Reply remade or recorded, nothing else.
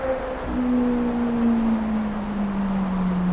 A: recorded